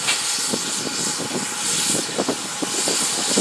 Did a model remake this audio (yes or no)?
no